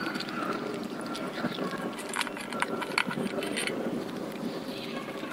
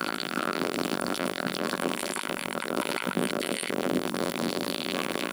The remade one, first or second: second